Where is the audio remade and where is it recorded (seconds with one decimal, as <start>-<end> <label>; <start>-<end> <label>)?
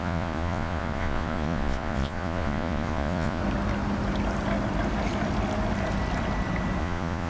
0.0-3.4 remade; 3.4-6.8 recorded; 6.8-7.3 remade